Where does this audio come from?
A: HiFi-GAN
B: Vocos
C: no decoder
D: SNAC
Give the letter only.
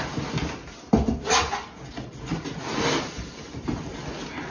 C